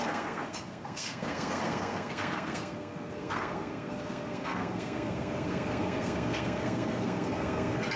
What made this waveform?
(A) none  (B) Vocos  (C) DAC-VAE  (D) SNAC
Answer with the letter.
D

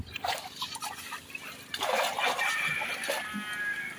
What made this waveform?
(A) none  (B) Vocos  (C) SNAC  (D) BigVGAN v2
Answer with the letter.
A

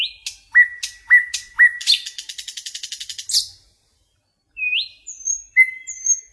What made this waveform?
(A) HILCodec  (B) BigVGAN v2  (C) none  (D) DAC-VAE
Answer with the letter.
C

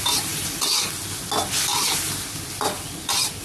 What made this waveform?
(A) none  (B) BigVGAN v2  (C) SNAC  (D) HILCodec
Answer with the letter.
A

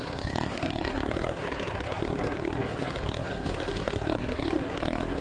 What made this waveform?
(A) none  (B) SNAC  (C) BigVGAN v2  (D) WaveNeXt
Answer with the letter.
B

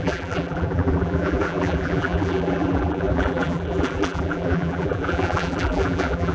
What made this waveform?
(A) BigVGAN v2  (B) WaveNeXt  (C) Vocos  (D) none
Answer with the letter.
A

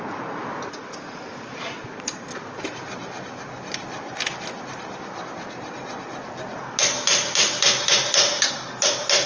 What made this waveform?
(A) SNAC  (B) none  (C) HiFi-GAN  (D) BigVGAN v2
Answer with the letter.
B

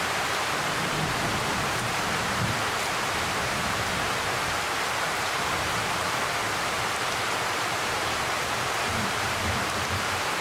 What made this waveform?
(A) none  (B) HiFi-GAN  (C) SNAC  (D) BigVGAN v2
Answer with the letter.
D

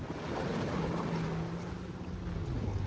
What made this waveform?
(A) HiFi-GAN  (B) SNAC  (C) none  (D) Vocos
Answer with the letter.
C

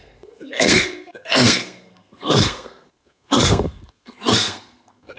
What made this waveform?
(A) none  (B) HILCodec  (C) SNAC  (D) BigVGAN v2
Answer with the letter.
C